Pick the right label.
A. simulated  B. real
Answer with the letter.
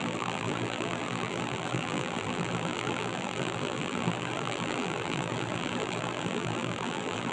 A